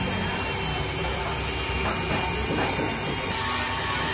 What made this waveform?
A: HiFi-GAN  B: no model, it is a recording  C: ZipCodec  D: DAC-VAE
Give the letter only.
B